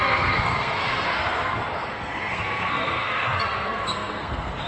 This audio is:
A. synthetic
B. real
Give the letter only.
A